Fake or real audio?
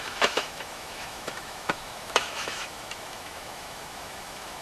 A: fake